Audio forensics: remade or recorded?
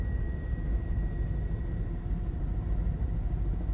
remade